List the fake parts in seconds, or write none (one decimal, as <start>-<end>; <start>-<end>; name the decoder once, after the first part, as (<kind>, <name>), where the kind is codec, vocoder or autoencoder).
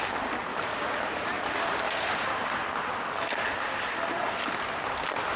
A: none